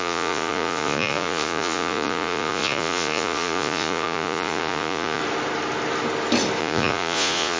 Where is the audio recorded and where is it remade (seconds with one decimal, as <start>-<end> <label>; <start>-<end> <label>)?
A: 0.0-5.2 remade; 5.2-6.6 recorded; 6.6-7.6 remade

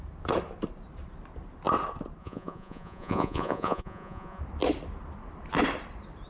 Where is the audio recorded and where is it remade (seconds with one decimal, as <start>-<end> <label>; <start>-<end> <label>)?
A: 0.0-2.2 recorded; 2.2-4.4 remade; 4.4-6.3 recorded

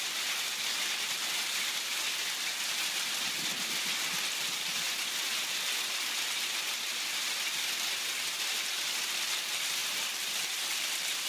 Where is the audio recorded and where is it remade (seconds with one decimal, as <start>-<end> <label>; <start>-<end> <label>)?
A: 0.0-9.8 recorded; 9.8-11.3 remade

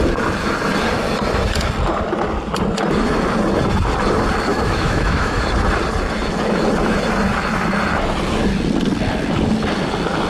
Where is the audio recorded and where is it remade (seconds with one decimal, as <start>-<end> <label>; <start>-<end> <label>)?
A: 0.0-4.5 recorded; 4.5-5.4 remade; 5.4-10.3 recorded